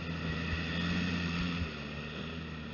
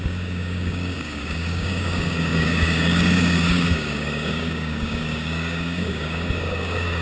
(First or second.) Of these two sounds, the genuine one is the first